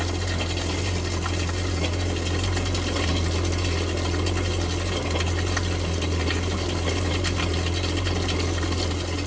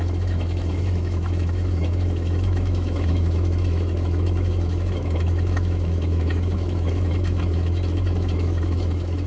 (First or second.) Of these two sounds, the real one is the first